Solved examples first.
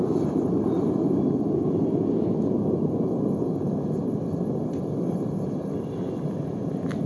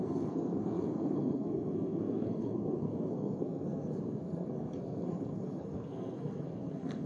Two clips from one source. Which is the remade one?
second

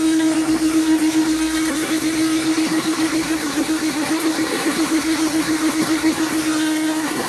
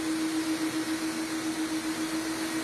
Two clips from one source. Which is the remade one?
first